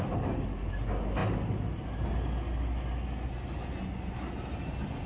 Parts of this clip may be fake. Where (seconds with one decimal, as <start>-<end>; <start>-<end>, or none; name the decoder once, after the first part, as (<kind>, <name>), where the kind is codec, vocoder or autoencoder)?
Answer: none